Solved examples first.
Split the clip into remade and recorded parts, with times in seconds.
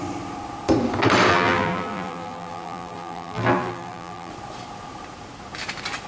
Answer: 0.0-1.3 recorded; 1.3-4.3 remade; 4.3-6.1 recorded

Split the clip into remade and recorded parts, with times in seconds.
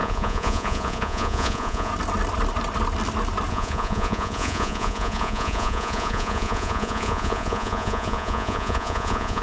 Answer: 0.0-1.9 remade; 1.9-3.5 recorded; 3.5-9.4 remade